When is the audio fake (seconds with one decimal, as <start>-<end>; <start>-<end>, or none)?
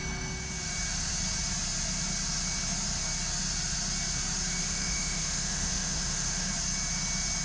4.6-6.5